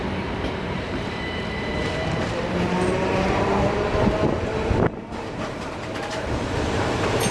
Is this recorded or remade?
remade